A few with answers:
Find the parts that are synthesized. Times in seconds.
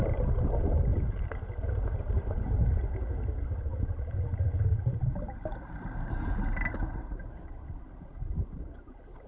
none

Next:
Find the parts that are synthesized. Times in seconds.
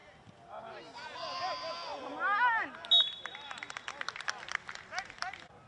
none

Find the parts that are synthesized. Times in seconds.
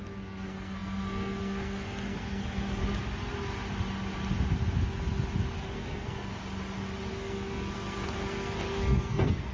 0.0-2.8 (codec, SNAC); 5.6-6.3; 7.1-9.5